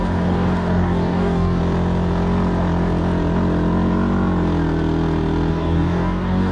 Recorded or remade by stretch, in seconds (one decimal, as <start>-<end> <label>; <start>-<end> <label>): 0.0-1.6 remade; 1.6-5.5 recorded; 5.5-6.5 remade

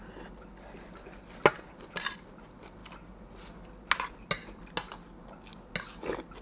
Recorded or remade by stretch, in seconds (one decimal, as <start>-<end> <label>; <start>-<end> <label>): 0.0-6.4 recorded

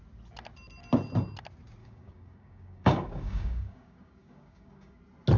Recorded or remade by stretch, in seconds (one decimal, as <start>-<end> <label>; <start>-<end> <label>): 0.0-1.8 recorded; 1.8-5.0 remade; 5.0-5.4 recorded

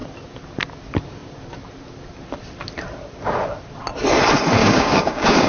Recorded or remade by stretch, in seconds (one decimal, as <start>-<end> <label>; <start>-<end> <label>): 0.0-4.6 recorded; 4.6-5.5 remade

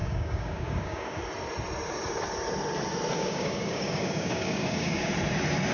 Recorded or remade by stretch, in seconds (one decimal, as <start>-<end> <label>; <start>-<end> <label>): 0.0-1.2 remade; 1.2-3.2 recorded; 3.2-5.1 remade; 5.1-5.7 recorded

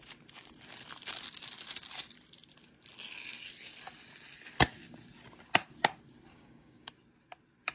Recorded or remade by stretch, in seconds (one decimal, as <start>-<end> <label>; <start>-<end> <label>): 0.0-6.3 recorded; 6.3-6.9 remade; 6.9-7.7 recorded

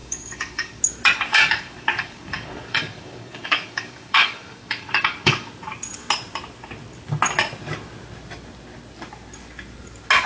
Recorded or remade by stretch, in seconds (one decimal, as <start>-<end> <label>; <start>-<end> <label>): 0.0-0.8 remade; 0.8-1.3 recorded; 1.3-5.5 remade; 5.5-10.3 recorded